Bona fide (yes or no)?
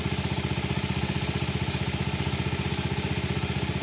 yes